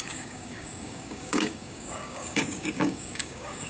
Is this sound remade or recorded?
remade